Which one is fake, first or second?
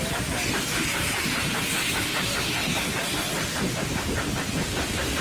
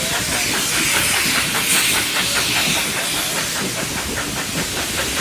first